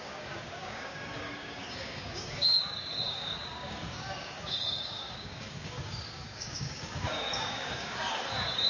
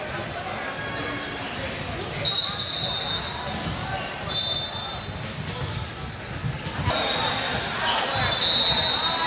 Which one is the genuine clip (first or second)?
second